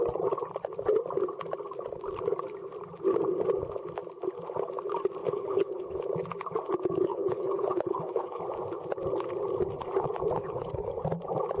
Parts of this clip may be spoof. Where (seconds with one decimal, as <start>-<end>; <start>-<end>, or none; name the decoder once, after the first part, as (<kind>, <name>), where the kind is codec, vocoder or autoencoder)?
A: 5.2-6.0 (codec, HILCodec); 7.1-8.4; 10.4-10.9